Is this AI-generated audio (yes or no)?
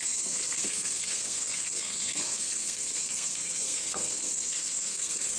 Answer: yes